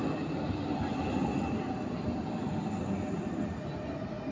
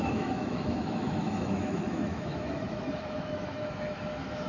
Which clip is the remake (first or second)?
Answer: second